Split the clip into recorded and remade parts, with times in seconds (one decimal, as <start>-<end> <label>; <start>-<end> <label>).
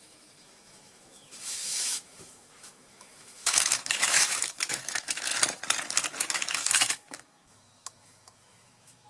0.0-5.3 remade; 5.3-6.2 recorded; 6.2-9.1 remade